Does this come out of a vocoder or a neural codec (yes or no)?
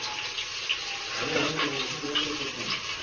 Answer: no